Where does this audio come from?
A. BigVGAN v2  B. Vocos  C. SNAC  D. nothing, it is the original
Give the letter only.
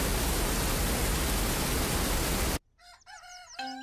D